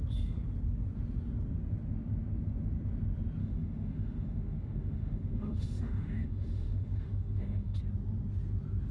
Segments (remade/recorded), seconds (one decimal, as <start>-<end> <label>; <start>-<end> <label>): 0.0-3.4 recorded; 3.4-7.8 remade; 7.8-8.9 recorded